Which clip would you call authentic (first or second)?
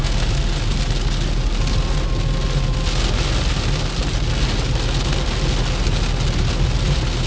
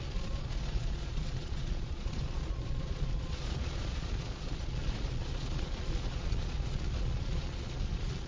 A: first